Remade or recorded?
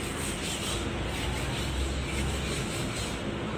recorded